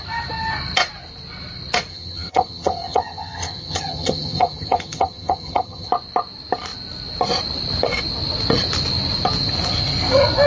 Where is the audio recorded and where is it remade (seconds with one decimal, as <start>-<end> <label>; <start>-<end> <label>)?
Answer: 0.0-1.9 recorded; 1.9-5.9 remade; 5.9-10.5 recorded